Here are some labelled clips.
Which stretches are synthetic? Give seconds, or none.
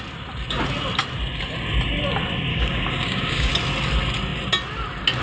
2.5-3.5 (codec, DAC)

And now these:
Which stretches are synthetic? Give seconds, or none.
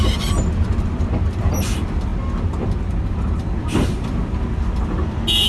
none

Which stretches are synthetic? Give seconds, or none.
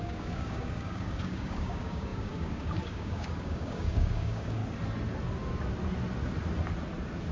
0.0-4.6 (codec, DAC)